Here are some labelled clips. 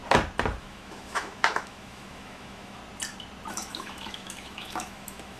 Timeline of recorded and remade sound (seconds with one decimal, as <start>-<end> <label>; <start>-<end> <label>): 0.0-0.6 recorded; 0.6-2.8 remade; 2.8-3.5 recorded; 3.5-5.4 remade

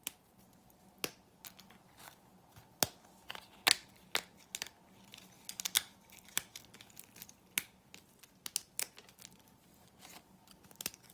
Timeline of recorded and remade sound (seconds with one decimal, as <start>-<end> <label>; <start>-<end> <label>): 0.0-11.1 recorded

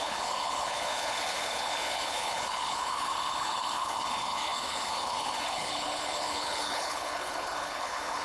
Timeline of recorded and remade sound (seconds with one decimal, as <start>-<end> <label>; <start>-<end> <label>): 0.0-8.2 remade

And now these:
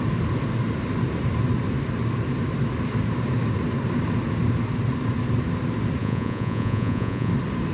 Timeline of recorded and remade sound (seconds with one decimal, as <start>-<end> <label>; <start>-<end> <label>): 0.0-6.0 recorded; 6.0-7.3 remade; 7.3-7.7 recorded

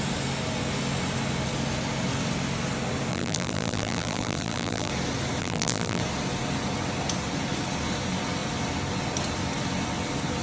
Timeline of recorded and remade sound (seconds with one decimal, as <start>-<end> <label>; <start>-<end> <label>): 0.0-3.1 recorded; 3.1-4.9 remade; 4.9-5.4 recorded; 5.4-6.0 remade; 6.0-10.4 recorded

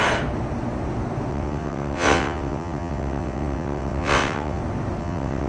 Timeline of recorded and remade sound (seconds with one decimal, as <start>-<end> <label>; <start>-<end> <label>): 0.0-1.3 recorded; 1.3-4.6 remade; 4.6-5.0 recorded; 5.0-5.5 remade

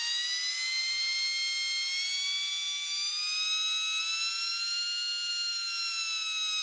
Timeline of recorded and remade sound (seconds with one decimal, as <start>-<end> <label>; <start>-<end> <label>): 0.0-6.6 recorded